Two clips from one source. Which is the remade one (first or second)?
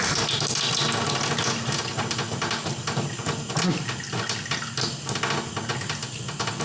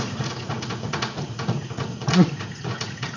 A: second